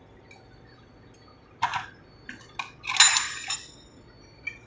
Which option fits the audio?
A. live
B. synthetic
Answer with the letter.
A